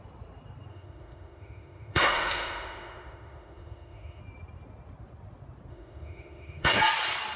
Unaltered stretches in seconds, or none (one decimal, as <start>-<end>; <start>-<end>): 0.0-0.7; 4.2-5.7; 6.8-7.4